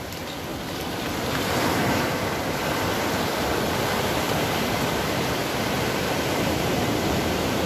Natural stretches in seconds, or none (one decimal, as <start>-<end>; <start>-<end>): 0.5-1.7